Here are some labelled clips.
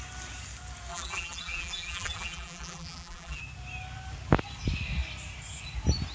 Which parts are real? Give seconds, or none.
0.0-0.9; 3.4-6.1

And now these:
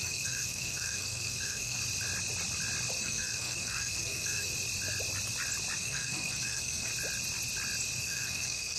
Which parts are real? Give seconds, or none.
1.8-3.0; 4.5-5.8; 6.9-8.0